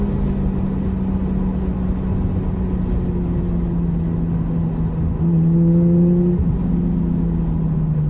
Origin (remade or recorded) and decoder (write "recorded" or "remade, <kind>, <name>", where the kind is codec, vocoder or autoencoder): recorded